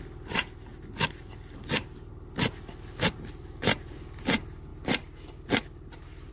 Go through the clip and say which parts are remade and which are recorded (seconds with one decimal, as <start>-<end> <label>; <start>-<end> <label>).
0.0-0.7 remade; 0.7-3.0 recorded; 3.0-6.3 remade